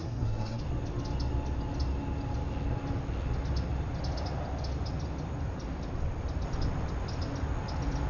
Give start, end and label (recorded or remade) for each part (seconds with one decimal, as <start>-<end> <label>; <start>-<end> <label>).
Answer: 0.0-0.6 remade; 0.6-8.1 recorded